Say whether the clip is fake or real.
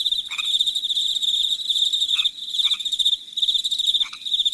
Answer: real